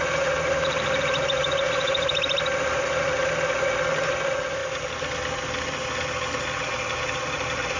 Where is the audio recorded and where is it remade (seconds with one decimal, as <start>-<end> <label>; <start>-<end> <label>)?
0.0-7.8 recorded